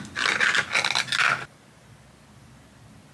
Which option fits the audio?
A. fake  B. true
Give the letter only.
B